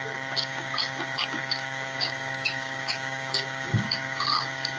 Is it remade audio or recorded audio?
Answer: remade